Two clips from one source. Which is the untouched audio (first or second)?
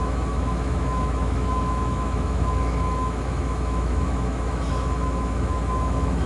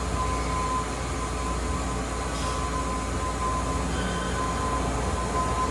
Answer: second